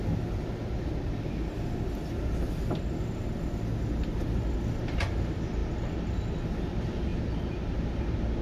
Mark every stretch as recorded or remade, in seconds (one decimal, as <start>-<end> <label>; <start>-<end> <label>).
0.0-8.4 recorded